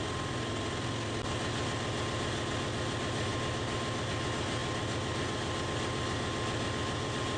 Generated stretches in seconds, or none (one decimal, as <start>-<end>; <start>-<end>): none